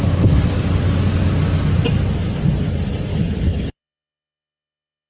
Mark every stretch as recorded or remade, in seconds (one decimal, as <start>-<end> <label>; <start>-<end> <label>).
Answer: 0.0-3.1 recorded; 3.1-5.1 remade